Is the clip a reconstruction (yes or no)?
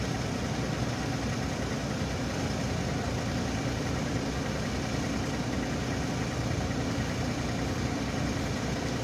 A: no